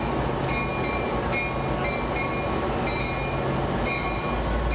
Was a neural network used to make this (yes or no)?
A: no